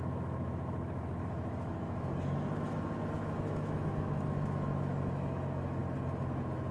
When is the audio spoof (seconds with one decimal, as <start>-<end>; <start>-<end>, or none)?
0.0-5.8